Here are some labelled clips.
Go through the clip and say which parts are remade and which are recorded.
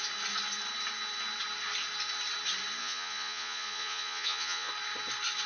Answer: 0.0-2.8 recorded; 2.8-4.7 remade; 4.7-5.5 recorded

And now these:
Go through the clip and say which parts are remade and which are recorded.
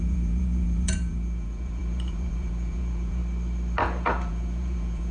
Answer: 0.0-3.2 remade; 3.2-3.8 recorded; 3.8-5.1 remade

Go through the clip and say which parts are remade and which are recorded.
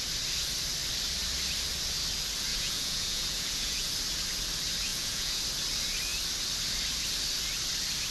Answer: 0.0-2.5 recorded; 2.5-3.9 remade; 3.9-4.9 recorded; 4.9-5.4 remade; 5.4-8.1 recorded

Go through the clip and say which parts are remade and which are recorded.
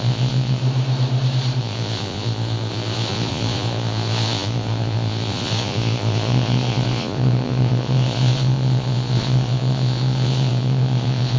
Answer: 0.0-0.6 remade; 0.6-1.6 recorded; 1.6-11.4 remade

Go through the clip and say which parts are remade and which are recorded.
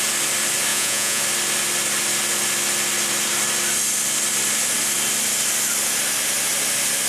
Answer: 0.0-0.7 recorded; 0.7-1.2 remade; 1.2-7.1 recorded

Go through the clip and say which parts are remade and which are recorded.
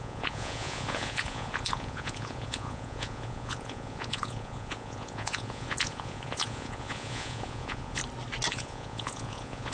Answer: 0.0-8.0 remade; 8.0-8.5 recorded; 8.5-9.7 remade